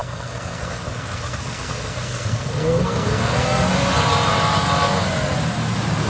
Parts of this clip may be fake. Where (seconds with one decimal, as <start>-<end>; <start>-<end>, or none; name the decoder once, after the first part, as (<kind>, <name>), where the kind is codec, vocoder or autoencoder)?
0.0-3.7 (codec, SNAC)